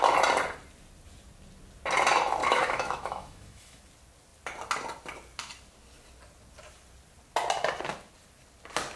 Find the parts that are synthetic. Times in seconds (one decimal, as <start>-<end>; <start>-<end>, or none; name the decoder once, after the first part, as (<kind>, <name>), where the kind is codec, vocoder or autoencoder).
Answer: 2.4-3.8 (autoencoder, DAC-VAE)